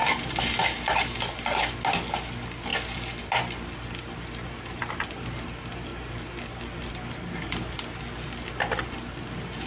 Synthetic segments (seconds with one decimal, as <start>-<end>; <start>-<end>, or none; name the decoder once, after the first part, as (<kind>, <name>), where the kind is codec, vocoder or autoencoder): none